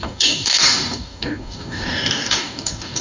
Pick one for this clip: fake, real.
fake